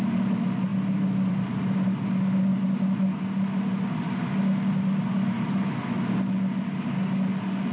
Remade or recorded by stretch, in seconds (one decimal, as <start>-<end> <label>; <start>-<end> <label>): 0.0-7.7 recorded